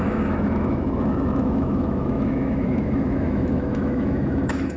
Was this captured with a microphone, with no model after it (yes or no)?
no